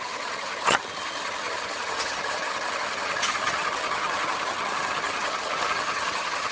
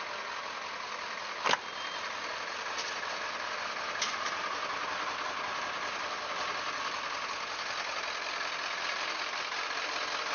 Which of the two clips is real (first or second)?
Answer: second